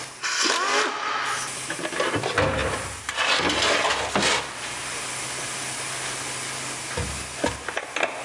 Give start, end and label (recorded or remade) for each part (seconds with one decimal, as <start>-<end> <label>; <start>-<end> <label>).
0.0-8.2 recorded